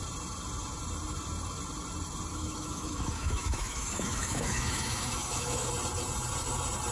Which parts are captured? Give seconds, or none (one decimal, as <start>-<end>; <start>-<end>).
0.0-2.3; 5.7-6.9